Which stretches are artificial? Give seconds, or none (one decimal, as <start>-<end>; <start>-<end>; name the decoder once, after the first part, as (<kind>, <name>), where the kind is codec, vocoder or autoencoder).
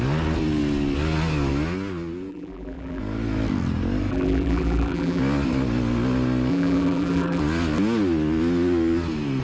2.3-3.0 (vocoder, BigVGAN v2); 4.1-5.2; 6.5-7.4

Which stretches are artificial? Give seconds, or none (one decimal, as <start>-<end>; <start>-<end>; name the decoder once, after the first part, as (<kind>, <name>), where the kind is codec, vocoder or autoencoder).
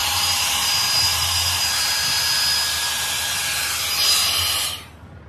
0.0-0.7 (vocoder, BigVGAN v2); 1.1-1.6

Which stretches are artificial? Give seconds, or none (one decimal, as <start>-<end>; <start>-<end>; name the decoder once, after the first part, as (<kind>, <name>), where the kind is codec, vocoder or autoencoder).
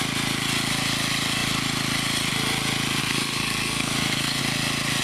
3.0-4.4 (codec, SNAC)